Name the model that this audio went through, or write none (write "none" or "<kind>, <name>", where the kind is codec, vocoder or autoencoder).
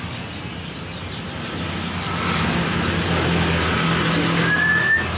none